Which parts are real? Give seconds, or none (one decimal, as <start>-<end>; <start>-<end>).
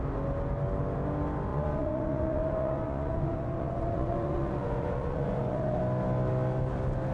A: 0.0-1.5; 5.8-7.1